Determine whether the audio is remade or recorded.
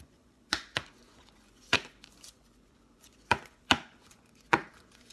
remade